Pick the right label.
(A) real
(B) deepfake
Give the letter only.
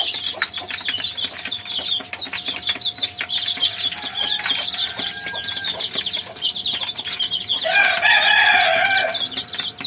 A